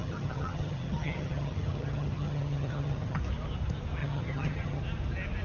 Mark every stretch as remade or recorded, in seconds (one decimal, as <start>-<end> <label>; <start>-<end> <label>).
0.0-3.2 remade; 3.2-4.0 recorded; 4.0-4.8 remade; 4.8-5.4 recorded